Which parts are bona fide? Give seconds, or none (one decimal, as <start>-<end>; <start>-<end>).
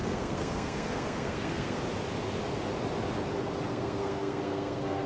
1.8-3.7